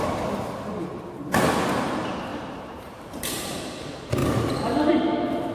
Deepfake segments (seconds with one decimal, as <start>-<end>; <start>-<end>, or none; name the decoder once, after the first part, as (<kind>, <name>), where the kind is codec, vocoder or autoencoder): 2.3-3.6 (vocoder, BigVGAN v2)